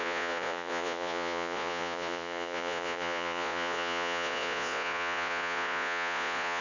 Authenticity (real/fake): fake